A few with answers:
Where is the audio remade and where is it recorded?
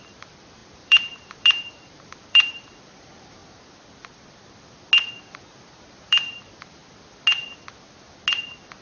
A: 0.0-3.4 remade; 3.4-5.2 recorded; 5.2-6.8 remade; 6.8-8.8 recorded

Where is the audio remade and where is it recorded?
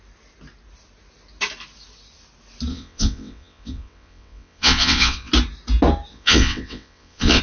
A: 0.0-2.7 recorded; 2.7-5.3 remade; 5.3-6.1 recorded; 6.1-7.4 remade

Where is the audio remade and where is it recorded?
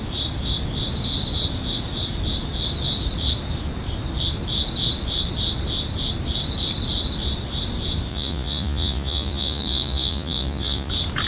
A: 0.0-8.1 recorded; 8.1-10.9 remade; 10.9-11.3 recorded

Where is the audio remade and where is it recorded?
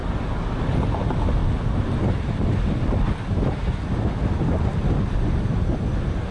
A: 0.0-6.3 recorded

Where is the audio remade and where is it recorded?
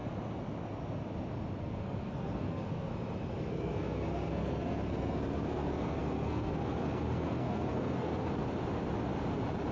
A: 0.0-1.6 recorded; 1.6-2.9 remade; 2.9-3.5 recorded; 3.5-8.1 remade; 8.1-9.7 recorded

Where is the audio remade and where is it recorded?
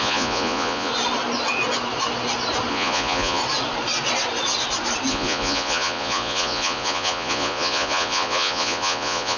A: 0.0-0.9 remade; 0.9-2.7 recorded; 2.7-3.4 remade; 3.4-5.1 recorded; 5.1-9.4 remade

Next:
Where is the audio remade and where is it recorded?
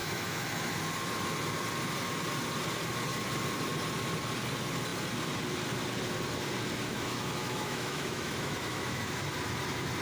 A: 0.0-0.8 remade; 0.8-6.9 recorded; 6.9-9.2 remade; 9.2-10.0 recorded